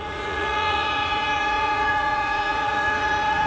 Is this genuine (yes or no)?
no